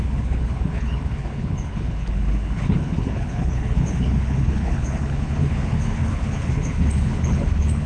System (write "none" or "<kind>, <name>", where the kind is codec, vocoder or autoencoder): codec, HILCodec